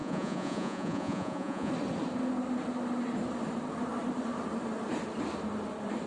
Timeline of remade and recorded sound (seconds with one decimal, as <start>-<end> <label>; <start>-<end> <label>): 0.0-1.7 remade; 1.7-6.1 recorded

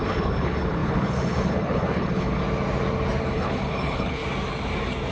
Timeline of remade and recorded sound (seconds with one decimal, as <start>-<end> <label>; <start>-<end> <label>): 0.0-2.4 remade; 2.4-3.3 recorded; 3.3-4.2 remade; 4.2-5.1 recorded

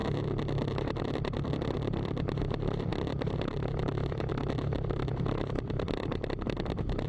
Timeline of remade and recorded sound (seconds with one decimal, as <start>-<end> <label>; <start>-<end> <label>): 0.0-7.1 remade